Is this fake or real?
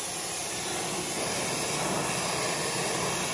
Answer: real